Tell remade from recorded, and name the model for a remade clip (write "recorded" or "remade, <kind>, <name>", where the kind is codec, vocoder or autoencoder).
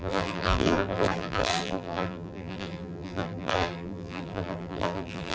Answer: remade, vocoder, BigVGAN v2